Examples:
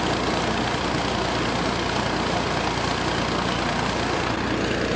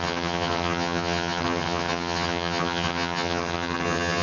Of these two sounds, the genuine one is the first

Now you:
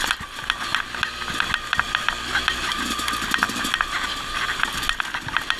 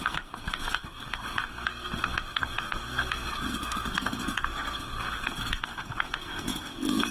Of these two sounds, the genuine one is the first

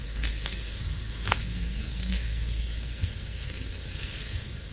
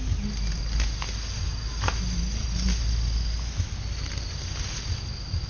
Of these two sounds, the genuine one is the second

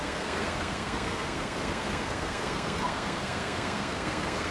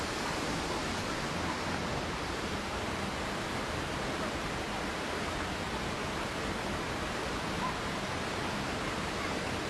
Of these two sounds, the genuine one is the second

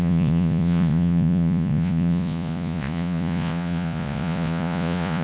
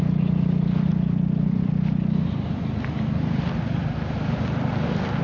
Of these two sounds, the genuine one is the second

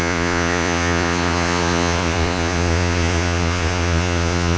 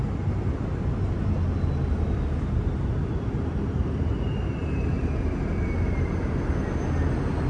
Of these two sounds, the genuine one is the second